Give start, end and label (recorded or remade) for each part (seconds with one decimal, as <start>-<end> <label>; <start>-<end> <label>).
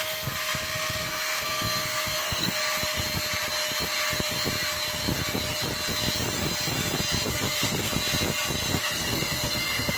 0.0-2.6 remade; 2.6-7.3 recorded; 7.3-7.9 remade; 7.9-8.8 recorded; 8.8-10.0 remade